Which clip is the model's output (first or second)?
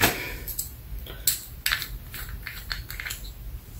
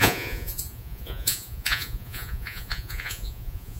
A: second